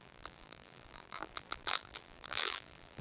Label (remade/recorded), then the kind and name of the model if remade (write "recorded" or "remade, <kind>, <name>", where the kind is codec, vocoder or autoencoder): remade, vocoder, BigVGAN v2